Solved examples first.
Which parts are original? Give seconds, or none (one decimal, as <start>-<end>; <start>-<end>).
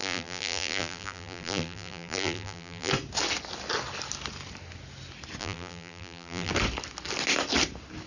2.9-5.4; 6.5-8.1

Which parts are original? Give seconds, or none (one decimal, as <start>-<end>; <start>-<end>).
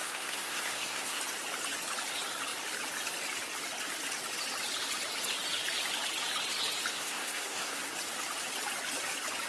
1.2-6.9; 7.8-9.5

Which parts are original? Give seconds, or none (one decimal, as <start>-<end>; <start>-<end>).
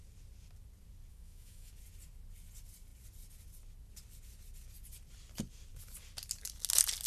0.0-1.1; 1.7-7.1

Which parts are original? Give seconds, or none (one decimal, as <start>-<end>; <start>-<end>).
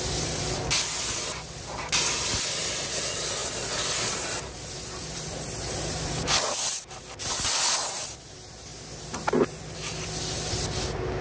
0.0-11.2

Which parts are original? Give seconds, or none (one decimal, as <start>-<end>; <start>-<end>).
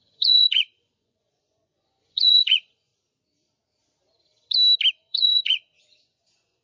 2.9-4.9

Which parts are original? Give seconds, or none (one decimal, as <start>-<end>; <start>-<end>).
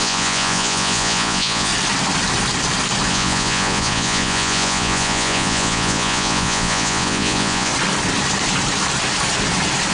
1.7-3.1; 7.7-9.9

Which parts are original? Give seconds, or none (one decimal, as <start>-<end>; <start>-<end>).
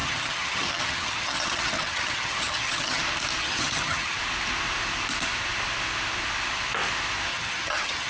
3.0-3.4; 4.2-7.3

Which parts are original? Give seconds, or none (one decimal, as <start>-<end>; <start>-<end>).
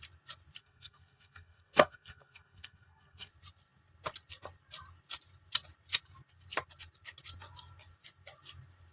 0.0-0.6; 3.3-8.9